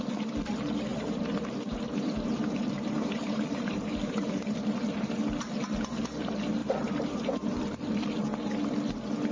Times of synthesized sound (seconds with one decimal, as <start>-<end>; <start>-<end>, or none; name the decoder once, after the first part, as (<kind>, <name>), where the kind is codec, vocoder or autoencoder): 0.9-5.2 (vocoder, BigVGAN v2); 6.6-8.9